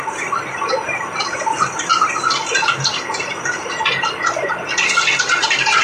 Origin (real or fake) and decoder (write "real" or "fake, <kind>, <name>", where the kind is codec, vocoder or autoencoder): real